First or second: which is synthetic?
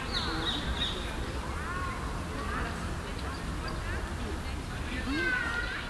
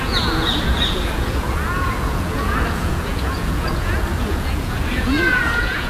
second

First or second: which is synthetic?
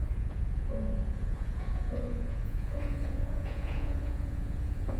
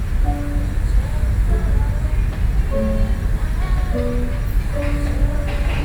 first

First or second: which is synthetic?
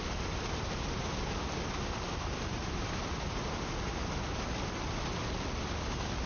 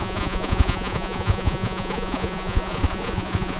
second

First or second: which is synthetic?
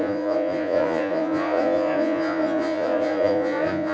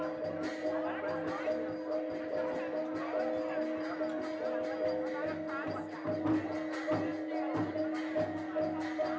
first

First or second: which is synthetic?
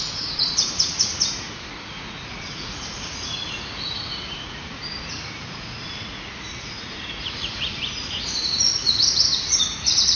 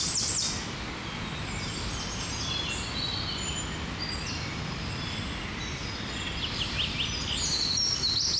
first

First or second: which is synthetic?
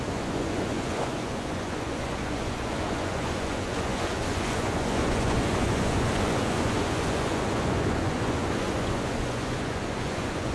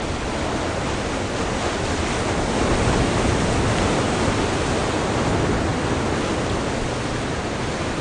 first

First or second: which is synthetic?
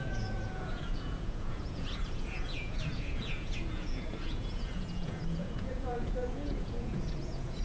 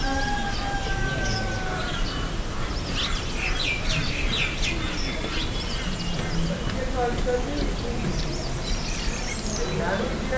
first